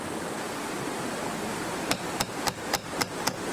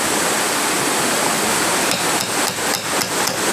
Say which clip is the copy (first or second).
first